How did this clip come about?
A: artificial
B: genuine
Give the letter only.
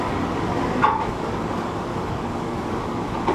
A